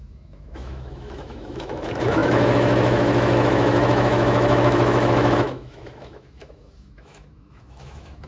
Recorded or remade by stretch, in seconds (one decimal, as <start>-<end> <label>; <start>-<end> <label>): 0.0-8.3 remade

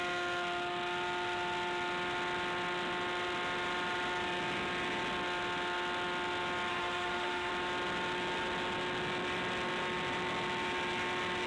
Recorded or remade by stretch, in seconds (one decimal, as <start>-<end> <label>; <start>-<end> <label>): 0.0-6.7 recorded; 6.7-7.5 remade; 7.5-11.5 recorded

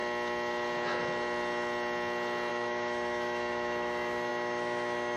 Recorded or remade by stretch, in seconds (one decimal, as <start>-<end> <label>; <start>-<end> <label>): 0.0-2.5 recorded; 2.5-5.2 remade

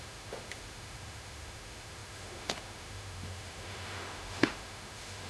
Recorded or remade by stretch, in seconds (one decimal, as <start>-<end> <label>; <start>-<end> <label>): 0.0-5.3 remade

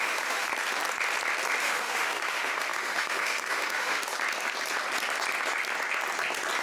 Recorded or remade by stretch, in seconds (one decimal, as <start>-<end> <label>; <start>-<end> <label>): 0.0-0.5 remade; 0.5-1.6 recorded; 1.6-4.1 remade; 4.1-6.6 recorded